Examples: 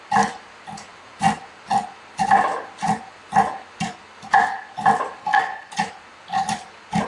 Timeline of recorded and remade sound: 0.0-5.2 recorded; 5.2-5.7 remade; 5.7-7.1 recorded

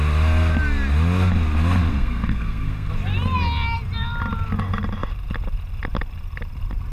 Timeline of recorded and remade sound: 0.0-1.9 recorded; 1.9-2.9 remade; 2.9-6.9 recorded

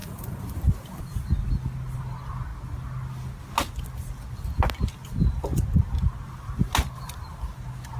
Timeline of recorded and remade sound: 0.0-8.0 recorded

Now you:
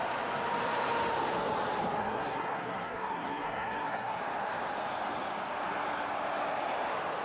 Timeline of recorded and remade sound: 0.0-2.0 recorded; 2.0-4.2 remade; 4.2-7.2 recorded